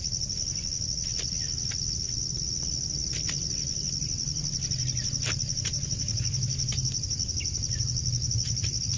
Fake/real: real